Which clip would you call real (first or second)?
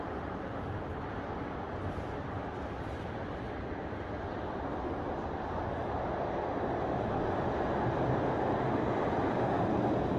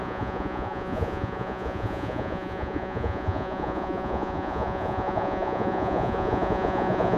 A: first